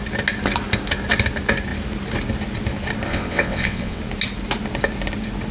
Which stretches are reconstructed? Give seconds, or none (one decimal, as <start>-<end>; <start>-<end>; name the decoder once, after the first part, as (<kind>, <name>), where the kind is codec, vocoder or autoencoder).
3.1-4.0 (vocoder, WaveNeXt)